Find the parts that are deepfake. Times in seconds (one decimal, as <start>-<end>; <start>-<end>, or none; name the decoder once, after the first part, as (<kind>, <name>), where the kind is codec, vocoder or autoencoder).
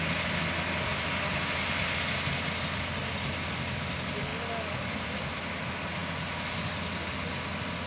none